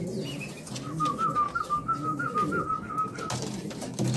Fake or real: real